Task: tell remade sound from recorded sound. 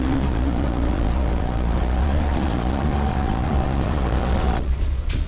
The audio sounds remade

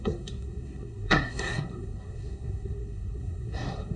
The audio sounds remade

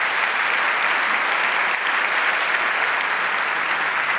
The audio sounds recorded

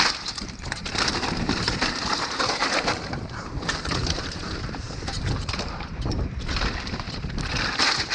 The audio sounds remade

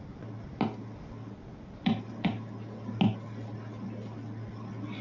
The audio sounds recorded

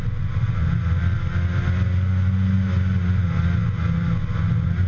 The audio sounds recorded